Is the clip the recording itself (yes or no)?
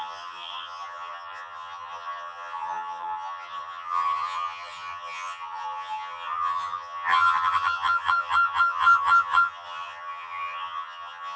no